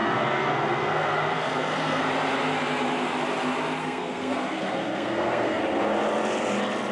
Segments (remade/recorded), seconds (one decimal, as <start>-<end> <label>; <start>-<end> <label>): 0.0-2.0 remade; 2.0-3.8 recorded; 3.8-5.6 remade; 5.6-6.9 recorded